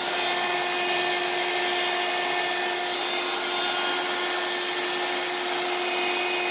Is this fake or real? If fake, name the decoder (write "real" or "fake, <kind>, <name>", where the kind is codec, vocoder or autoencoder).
real